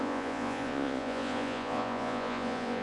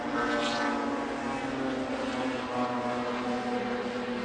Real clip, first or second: second